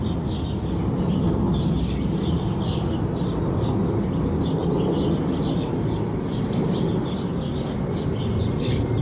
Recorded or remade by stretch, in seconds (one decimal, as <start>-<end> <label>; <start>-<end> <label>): 0.0-9.0 recorded